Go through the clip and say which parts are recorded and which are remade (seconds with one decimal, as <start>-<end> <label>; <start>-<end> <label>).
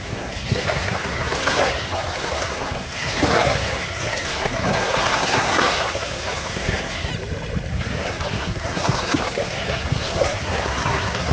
0.0-7.1 remade; 7.1-7.7 recorded; 7.7-11.3 remade